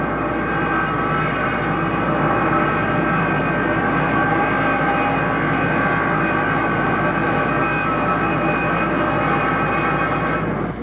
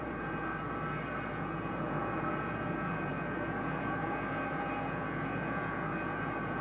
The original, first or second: first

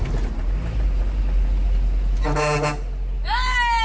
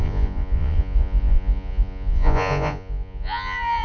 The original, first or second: first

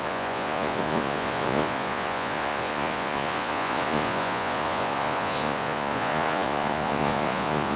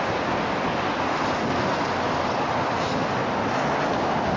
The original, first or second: second